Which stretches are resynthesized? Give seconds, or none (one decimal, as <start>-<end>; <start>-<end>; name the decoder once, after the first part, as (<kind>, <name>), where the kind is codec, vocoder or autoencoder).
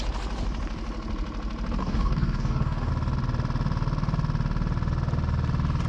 1.8-2.9 (codec, DAC)